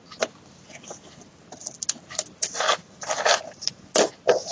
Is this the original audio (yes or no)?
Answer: yes